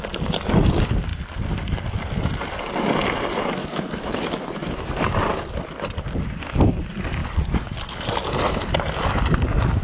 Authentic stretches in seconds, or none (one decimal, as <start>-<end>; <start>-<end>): 0.0-3.6; 4.9-9.8